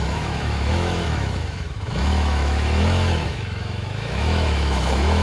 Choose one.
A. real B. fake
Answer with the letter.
B